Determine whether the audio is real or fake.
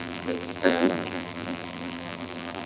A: fake